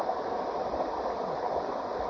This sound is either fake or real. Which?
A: real